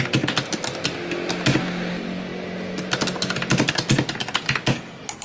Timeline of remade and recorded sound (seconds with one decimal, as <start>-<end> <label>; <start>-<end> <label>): 0.0-5.2 recorded